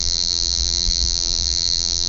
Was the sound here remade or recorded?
remade